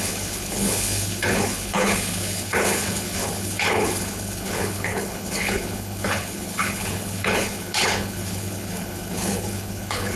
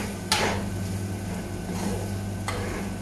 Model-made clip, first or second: first